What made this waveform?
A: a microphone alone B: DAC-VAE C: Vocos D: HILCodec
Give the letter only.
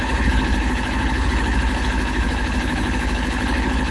D